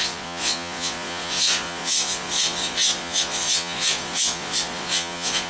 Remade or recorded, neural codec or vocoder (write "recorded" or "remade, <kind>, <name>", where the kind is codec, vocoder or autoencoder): remade, vocoder, Vocos